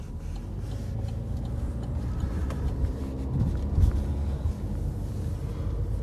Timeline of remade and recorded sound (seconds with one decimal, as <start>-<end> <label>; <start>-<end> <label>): 0.0-2.4 recorded; 2.4-3.0 remade; 3.0-6.0 recorded